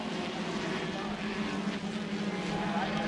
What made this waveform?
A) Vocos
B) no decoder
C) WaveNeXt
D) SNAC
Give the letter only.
B